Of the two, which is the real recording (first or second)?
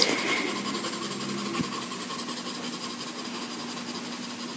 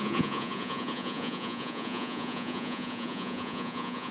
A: first